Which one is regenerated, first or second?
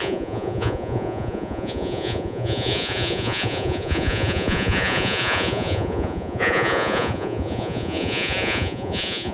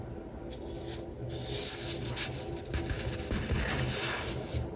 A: first